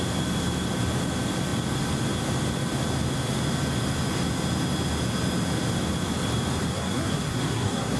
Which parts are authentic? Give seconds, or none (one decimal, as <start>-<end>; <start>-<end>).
0.0-6.6